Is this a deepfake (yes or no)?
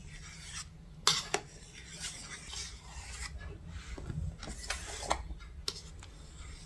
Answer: no